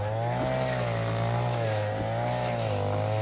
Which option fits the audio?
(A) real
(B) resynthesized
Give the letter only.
A